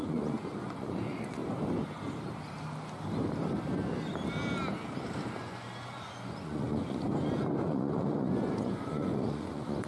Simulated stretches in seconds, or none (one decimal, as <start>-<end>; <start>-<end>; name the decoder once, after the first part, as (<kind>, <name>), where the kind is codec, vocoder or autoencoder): 0.0-1.4 (vocoder, Vocos); 5.4-9.9